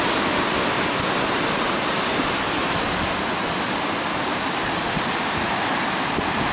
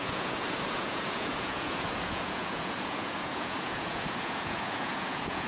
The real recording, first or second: first